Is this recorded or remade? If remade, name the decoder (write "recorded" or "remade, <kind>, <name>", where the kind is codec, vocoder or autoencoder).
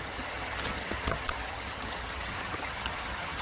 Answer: remade, vocoder, HiFi-GAN